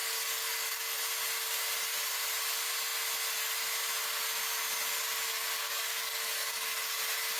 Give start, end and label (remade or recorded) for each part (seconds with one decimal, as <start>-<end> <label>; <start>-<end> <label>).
0.0-1.0 remade; 1.0-5.3 recorded; 5.3-7.0 remade; 7.0-7.4 recorded